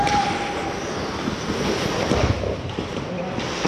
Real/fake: real